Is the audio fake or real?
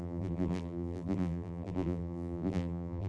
fake